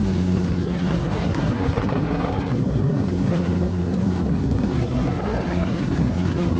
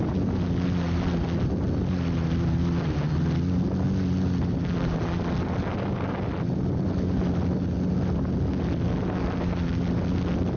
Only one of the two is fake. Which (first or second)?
first